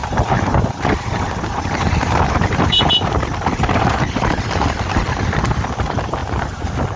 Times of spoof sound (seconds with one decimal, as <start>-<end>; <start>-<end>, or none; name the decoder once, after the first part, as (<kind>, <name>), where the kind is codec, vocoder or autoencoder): 0.0-4.2 (vocoder, BigVGAN v2)